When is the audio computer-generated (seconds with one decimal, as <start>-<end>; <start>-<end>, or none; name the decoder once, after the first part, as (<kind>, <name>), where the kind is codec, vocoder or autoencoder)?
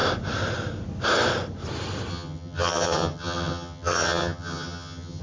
2.1-5.2 (vocoder, HiFi-GAN)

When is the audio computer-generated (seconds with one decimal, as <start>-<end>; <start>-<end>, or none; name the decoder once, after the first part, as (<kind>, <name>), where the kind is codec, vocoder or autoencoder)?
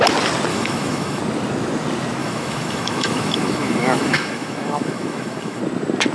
0.5-1.2 (autoencoder, DAC-VAE); 2.2-5.6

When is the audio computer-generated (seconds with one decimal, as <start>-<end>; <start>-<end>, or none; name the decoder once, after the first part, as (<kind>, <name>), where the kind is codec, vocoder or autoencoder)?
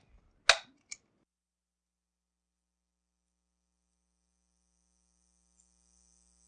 none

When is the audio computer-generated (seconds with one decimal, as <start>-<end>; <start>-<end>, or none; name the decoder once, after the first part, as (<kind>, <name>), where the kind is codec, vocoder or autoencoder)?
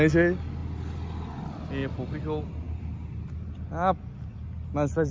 none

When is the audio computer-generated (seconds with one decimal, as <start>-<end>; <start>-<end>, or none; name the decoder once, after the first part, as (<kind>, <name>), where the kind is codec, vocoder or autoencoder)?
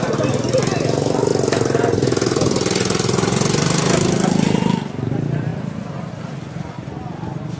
5.5-6.2 (vocoder, BigVGAN v2)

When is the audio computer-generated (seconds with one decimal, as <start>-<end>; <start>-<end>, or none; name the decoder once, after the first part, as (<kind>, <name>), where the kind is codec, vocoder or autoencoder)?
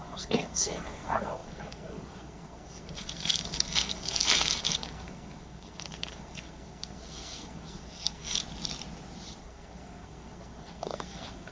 0.0-8.4 (codec, SNAC); 9.4-11.5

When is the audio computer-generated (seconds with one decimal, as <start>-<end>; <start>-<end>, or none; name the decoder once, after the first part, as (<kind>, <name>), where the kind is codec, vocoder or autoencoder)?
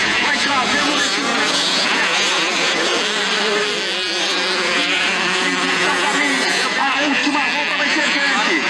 0.0-2.9 (vocoder, Vocos); 4.2-7.2; 7.8-8.7